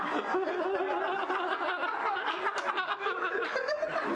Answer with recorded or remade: recorded